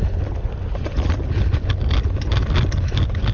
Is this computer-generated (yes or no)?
no